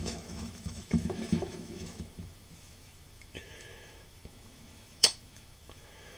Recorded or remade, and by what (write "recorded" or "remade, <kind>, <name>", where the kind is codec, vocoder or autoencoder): remade, autoencoder, DAC-VAE